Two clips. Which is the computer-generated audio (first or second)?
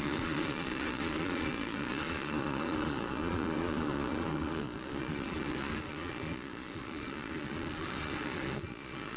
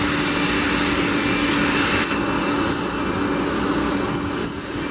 first